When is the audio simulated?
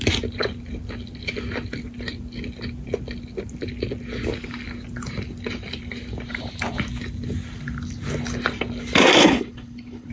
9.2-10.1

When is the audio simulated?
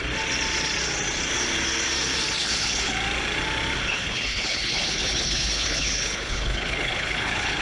2.4-2.9; 3.9-7.6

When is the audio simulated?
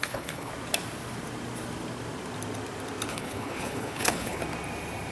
0.0-0.5; 3.1-4.4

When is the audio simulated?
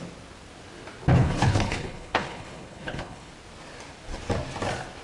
1.2-3.3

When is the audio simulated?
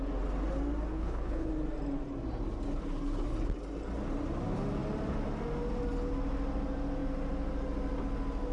0.9-1.5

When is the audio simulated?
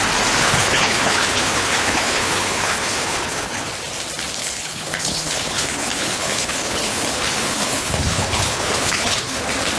0.4-3.7; 4.4-9.4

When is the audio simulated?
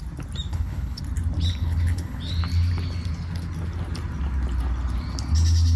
0.5-1.0; 1.5-2.2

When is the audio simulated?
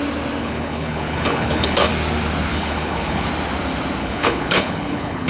0.4-1.9; 2.5-3.3; 4.0-5.3